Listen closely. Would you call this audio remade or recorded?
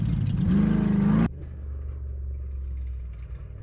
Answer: recorded